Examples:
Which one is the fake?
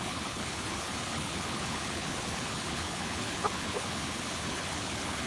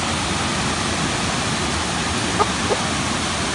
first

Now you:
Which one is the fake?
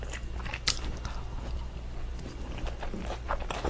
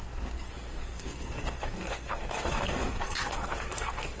second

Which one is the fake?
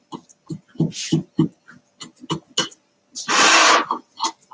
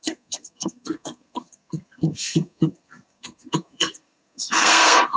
second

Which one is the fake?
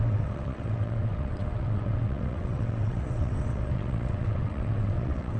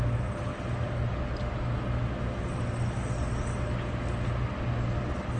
first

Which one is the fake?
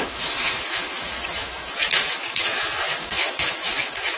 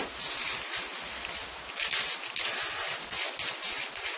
first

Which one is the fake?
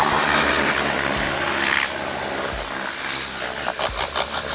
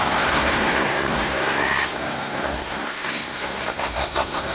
second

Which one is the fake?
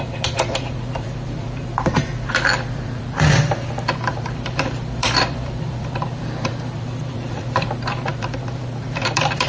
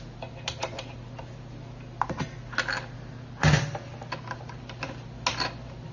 first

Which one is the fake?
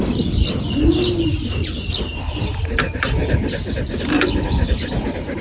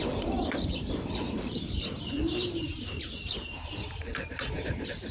second